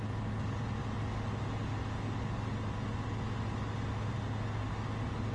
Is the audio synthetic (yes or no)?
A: no